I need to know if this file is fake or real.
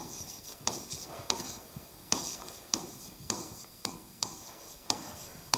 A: fake